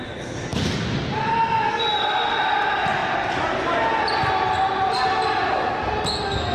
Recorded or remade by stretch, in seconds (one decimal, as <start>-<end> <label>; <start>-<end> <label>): 0.0-6.5 recorded